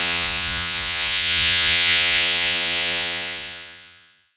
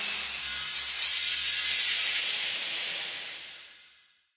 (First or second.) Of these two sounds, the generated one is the first